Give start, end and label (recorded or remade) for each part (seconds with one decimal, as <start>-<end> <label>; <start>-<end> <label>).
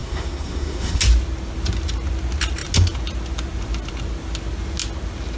0.0-1.0 remade; 1.0-5.4 recorded